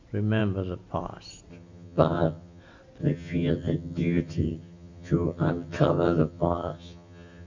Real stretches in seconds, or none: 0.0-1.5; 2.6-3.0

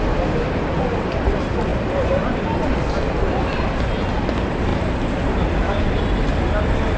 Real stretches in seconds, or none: 0.0-7.0

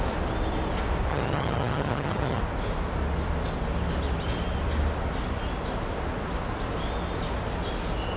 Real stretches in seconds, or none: 0.0-1.1; 2.4-8.2